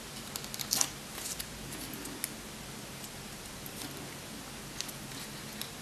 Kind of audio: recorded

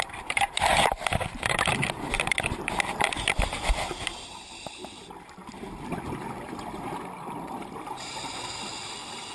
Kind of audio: recorded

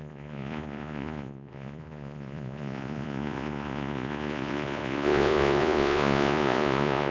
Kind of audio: remade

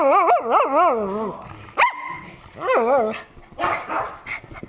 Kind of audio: recorded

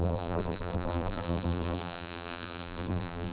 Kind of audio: remade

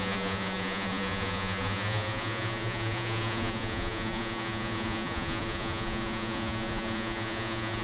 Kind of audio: remade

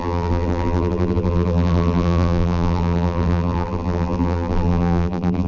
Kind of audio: remade